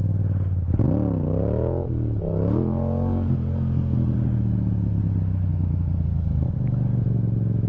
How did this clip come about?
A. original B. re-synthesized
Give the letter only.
A